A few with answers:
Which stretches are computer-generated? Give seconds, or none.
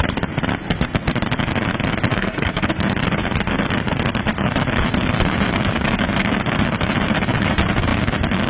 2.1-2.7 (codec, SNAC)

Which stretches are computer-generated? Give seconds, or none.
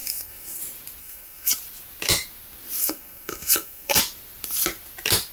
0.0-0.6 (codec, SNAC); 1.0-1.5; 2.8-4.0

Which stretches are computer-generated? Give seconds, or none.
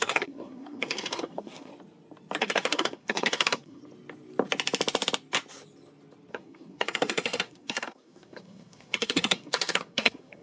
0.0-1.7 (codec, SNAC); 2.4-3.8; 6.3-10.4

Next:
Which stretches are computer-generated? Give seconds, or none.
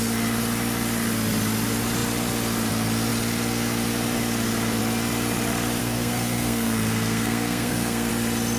5.8-8.1 (codec, SNAC)